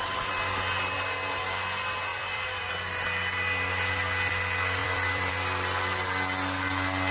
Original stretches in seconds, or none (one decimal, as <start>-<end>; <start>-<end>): 0.0-2.1; 2.7-4.8; 5.3-7.1